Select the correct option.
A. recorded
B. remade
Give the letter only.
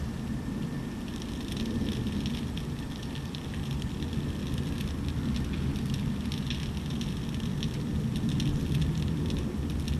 A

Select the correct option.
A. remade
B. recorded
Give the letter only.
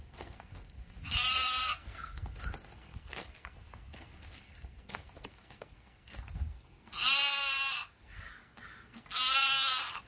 A